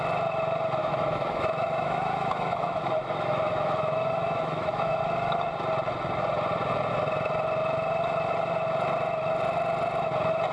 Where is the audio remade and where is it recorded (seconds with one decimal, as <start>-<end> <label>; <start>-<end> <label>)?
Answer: 0.0-0.8 recorded; 0.8-5.0 remade; 5.0-10.5 recorded